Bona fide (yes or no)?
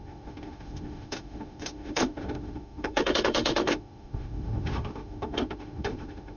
no